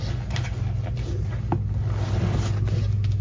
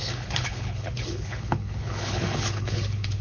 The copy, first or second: second